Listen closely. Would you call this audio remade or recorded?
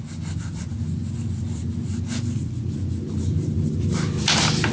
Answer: recorded